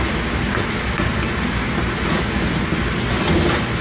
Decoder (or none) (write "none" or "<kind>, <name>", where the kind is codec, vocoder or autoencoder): none